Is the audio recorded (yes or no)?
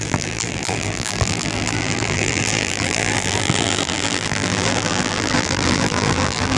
no